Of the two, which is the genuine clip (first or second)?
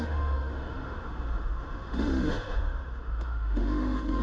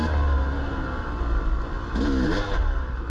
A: second